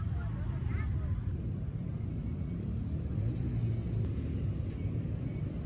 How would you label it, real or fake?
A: real